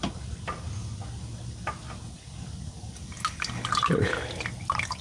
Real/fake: real